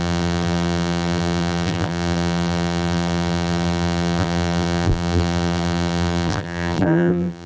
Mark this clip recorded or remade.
remade